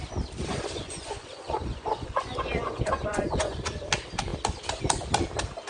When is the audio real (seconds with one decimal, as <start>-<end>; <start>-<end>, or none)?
0.0-0.5; 3.9-5.7